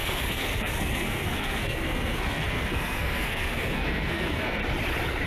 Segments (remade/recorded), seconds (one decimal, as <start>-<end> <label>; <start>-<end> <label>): 0.0-4.6 remade; 4.6-5.3 recorded